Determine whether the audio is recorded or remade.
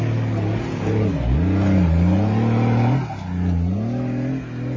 recorded